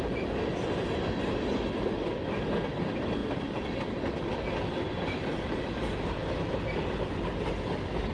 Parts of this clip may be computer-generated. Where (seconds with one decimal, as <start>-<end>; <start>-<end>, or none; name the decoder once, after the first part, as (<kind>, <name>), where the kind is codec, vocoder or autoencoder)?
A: none